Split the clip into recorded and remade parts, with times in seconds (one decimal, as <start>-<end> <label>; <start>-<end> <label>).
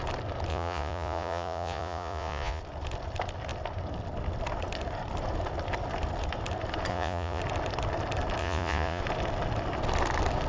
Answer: 0.0-0.5 recorded; 0.5-2.6 remade; 2.6-6.9 recorded; 6.9-7.4 remade; 7.4-8.4 recorded; 8.4-9.0 remade; 9.0-10.5 recorded